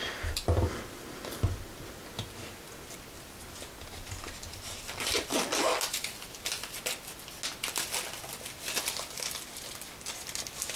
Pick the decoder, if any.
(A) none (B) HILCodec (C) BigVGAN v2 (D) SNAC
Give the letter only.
A